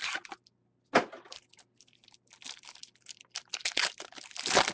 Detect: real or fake real